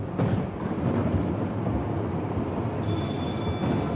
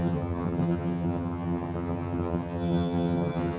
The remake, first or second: second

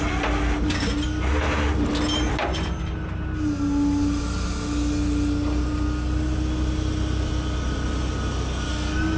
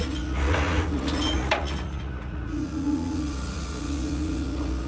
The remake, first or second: second